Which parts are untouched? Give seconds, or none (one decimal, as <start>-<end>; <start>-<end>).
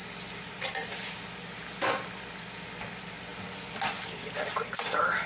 0.0-5.3